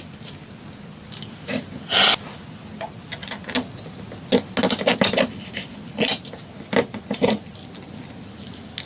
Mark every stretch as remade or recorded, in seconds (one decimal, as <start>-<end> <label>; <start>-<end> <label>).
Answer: 0.0-8.9 recorded